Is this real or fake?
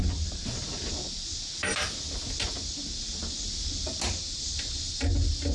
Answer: real